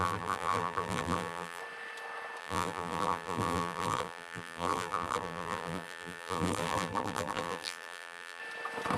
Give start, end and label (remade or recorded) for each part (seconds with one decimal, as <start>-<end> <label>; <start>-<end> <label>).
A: 0.0-1.6 remade; 1.6-2.4 recorded; 2.4-8.4 remade; 8.4-9.0 recorded